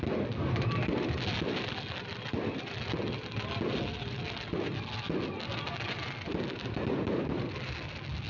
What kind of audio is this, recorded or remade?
recorded